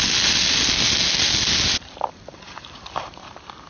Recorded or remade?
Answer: recorded